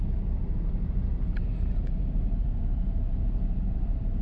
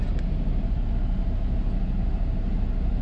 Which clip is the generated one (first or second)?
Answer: first